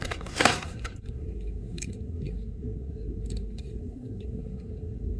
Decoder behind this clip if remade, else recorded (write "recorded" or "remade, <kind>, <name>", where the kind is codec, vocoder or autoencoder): remade, codec, SNAC